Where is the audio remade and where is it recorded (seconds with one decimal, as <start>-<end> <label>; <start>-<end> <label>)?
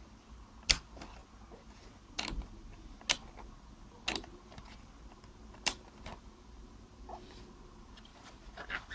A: 0.0-1.2 remade; 1.2-5.0 recorded; 5.0-8.1 remade; 8.1-8.9 recorded